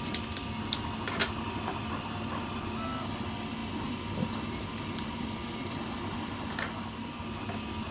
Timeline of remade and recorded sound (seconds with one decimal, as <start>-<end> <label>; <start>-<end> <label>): 0.0-7.9 recorded